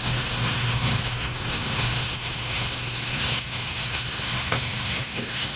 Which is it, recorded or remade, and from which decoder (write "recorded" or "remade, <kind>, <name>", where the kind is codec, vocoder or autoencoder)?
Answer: remade, codec, SNAC